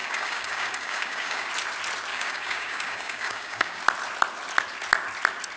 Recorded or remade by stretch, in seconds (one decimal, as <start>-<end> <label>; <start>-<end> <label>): 0.0-1.5 remade; 1.5-2.1 recorded; 2.1-3.8 remade; 3.8-5.6 recorded